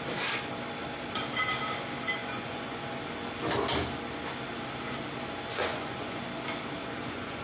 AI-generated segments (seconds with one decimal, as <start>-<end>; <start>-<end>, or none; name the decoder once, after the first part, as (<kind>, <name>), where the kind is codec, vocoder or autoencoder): 2.2-2.8 (vocoder, Vocos); 5.5-6.2; 6.8-7.4